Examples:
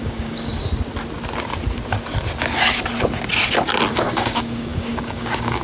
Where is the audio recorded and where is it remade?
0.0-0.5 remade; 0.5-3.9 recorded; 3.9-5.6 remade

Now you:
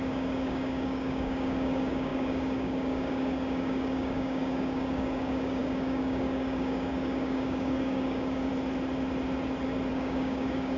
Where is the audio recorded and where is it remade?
0.0-8.5 remade; 8.5-9.9 recorded; 9.9-10.8 remade

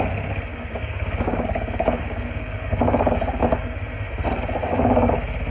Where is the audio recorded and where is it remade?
0.0-0.5 recorded; 0.5-3.5 remade; 3.5-4.6 recorded; 4.6-5.1 remade; 5.1-5.5 recorded

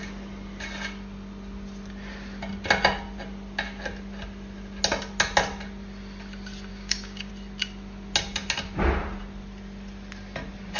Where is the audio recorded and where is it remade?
0.0-6.7 recorded; 6.7-7.3 remade; 7.3-10.8 recorded

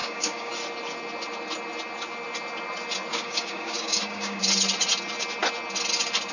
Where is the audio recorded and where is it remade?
0.0-0.5 remade; 0.5-3.1 recorded; 3.1-4.4 remade; 4.4-6.3 recorded